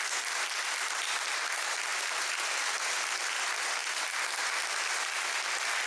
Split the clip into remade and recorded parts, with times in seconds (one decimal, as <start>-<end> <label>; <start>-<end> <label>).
0.0-5.9 recorded